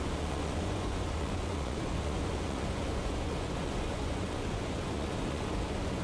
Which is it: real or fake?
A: fake